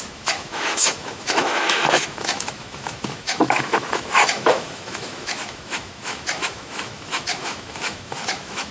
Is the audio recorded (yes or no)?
no